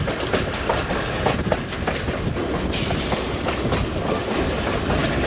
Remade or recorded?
recorded